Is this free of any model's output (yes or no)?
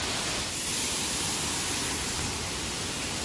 yes